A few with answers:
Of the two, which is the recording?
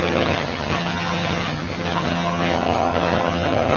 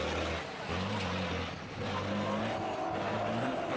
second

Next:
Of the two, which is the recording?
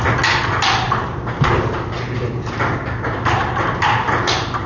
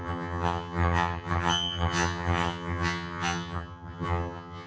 first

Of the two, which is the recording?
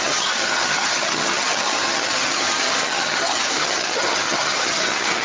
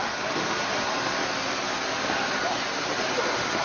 second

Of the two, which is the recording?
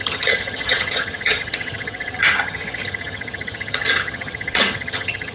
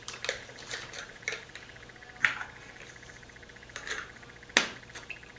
second